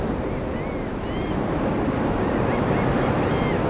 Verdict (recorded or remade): recorded